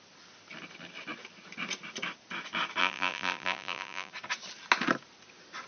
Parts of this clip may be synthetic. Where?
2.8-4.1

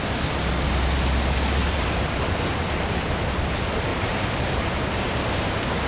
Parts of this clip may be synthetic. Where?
1.6-3.1; 3.9-5.2